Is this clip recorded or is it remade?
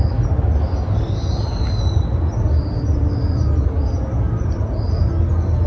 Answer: recorded